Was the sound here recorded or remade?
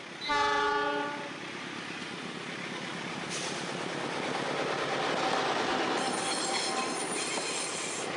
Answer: recorded